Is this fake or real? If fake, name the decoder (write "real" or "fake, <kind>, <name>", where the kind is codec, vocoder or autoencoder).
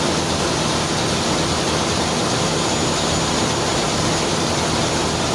real